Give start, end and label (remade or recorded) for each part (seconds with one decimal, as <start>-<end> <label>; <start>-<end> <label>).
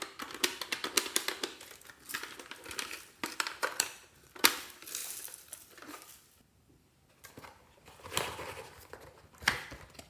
0.0-10.1 recorded